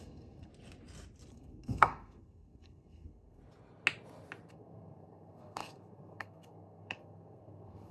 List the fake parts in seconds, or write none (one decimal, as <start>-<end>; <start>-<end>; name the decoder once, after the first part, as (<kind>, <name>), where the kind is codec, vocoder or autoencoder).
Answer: 0.0-0.5 (codec, SNAC); 1.3-3.4; 4.5-7.9